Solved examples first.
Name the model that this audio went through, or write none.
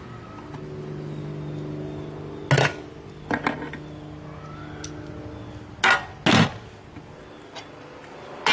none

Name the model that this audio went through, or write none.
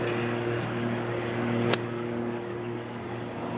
codec, DAC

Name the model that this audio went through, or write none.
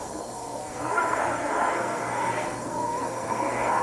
codec, SNAC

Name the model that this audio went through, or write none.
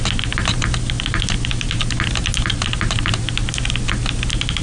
none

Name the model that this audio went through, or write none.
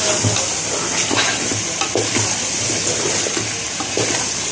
none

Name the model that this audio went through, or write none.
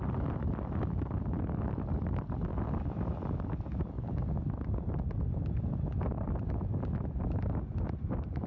none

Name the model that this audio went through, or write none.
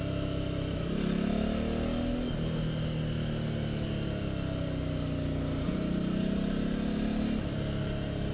none